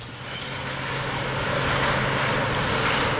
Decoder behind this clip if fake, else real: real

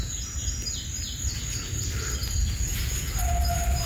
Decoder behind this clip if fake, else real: real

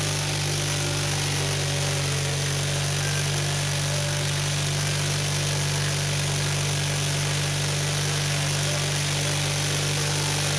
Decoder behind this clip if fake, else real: real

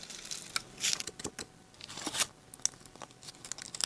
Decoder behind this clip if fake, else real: real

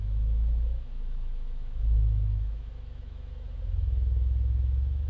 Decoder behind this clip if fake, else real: fake, autoencoder, DAC-VAE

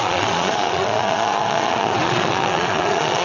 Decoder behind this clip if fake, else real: fake, vocoder, Vocos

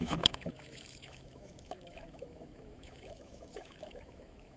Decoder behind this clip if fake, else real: fake, autoencoder, DAC-VAE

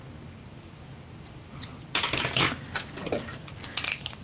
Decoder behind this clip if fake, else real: real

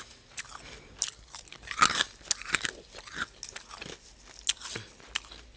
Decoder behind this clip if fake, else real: real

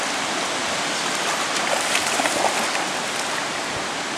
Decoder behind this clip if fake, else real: real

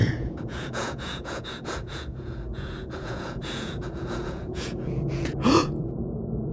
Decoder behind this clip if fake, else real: fake, vocoder, Vocos